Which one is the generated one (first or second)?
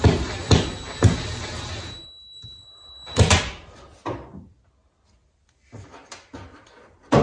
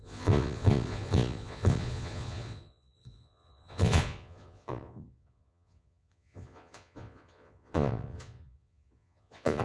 second